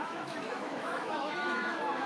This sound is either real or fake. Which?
fake